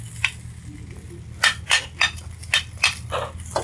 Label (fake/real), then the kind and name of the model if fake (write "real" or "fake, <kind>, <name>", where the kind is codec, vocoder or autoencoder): real